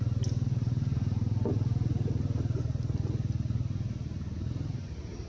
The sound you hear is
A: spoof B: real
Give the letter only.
B